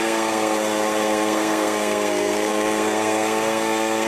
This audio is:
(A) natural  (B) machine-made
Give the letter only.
B